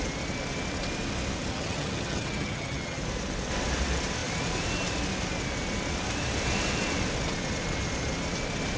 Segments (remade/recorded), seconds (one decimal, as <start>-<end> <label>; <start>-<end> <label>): 0.0-1.5 recorded; 1.5-3.0 remade; 3.0-8.8 recorded